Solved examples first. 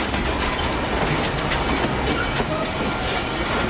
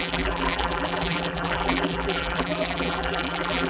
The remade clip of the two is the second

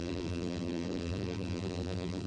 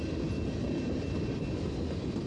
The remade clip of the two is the first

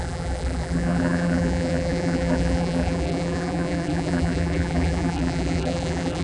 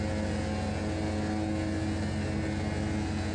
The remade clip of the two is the first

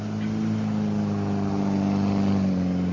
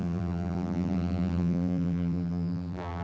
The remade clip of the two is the second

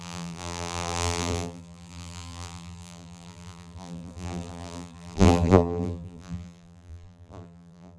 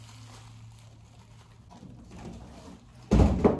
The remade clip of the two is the first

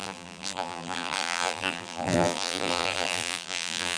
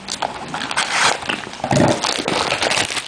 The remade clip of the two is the first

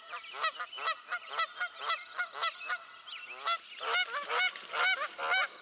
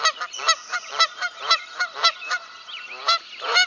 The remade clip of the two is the second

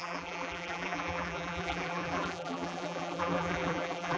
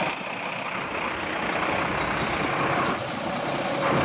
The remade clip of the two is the first